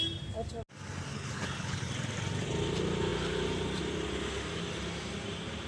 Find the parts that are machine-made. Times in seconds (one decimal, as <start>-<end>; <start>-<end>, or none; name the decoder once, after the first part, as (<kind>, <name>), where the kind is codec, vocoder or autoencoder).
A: 1.1-1.9 (codec, HILCodec)